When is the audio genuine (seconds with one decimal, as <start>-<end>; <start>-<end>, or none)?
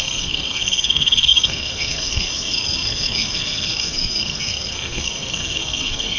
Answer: none